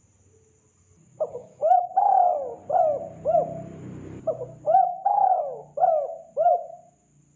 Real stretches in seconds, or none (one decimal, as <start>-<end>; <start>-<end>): 0.0-1.4; 1.9-4.9; 5.4-7.4